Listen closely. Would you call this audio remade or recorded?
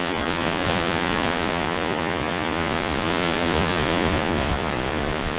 remade